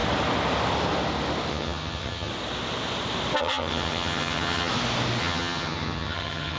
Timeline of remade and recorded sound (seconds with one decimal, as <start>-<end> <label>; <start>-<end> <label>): 0.0-1.5 recorded; 1.5-2.3 remade; 2.3-3.4 recorded; 3.4-4.7 remade; 4.7-5.2 recorded; 5.2-6.6 remade